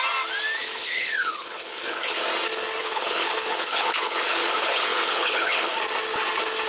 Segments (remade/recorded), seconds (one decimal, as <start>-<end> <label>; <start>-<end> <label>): 0.0-0.6 recorded; 0.6-2.2 remade; 2.2-2.8 recorded; 2.8-5.7 remade; 5.7-6.7 recorded